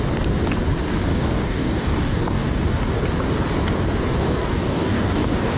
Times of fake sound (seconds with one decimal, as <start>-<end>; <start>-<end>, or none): 1.1-3.0; 4.2-5.6